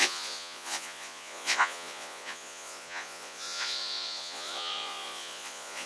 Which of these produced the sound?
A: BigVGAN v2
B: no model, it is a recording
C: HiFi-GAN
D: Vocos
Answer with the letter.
D